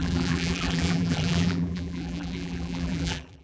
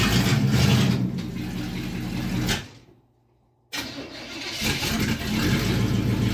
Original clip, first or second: second